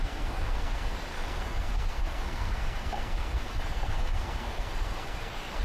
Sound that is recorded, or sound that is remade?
remade